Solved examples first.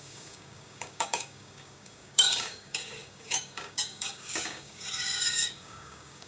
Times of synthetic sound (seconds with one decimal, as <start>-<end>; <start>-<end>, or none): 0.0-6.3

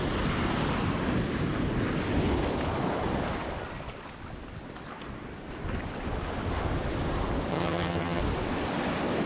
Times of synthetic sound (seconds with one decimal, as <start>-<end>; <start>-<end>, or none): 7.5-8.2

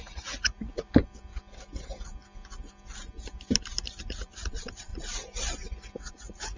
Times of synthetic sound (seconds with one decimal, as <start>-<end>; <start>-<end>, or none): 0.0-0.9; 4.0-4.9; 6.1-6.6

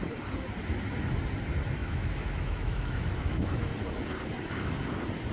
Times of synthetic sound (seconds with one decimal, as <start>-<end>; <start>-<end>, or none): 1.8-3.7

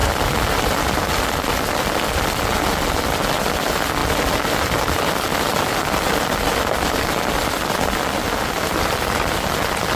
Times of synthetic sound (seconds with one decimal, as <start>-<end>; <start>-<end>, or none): none

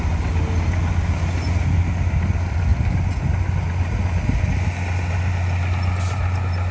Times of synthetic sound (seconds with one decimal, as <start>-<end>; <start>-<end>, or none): none

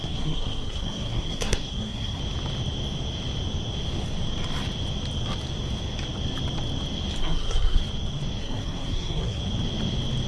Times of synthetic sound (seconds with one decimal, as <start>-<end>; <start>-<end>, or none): 0.0-2.2; 7.2-7.8; 8.4-9.4

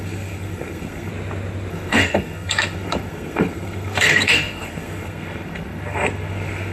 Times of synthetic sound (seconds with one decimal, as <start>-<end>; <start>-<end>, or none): 0.0-1.1; 1.7-6.7